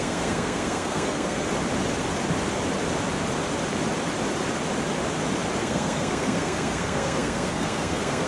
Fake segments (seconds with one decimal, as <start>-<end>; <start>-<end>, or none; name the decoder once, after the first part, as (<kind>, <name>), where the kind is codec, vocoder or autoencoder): 0.0-1.5 (codec, SNAC); 5.6-8.3